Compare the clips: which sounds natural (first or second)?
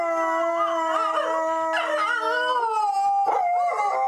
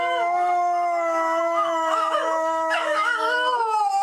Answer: first